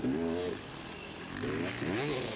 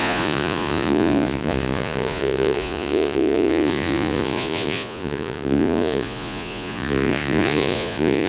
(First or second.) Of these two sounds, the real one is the first